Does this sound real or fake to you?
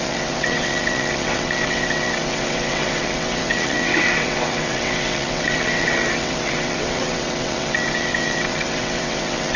fake